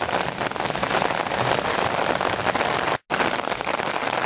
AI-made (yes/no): no